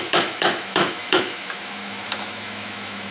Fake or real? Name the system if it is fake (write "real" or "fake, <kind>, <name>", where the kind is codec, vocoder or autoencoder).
fake, autoencoder, DAC-VAE